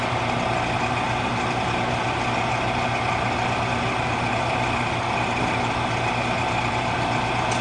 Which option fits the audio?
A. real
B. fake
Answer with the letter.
A